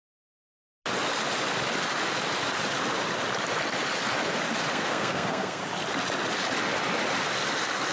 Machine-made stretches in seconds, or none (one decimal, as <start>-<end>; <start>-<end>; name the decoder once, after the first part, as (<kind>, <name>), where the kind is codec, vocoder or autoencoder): 4.7-5.6 (codec, SNAC)